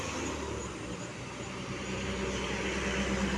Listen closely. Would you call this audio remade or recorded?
recorded